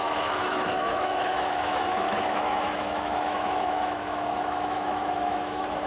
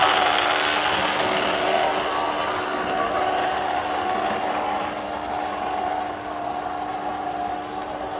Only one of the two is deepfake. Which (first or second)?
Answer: first